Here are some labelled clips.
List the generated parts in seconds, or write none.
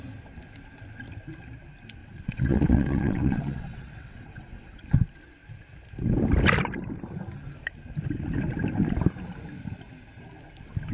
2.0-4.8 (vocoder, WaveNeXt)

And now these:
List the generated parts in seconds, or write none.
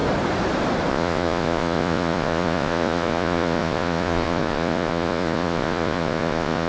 0.9-6.7 (vocoder, Vocos)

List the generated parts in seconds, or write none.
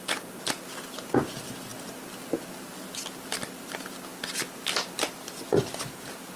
1.7-2.2 (vocoder, BigVGAN v2)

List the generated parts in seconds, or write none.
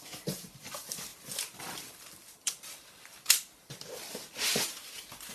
0.0-5.3 (vocoder, BigVGAN v2)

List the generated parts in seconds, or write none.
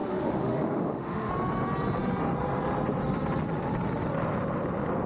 0.0-1.3 (autoencoder, DAC-VAE)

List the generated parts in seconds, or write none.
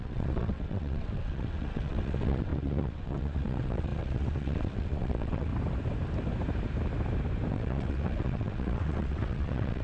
0.0-5.5 (vocoder, WaveNeXt); 7.5-9.8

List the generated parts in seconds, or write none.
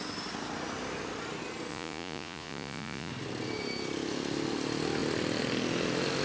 1.7-3.1 (vocoder, Vocos)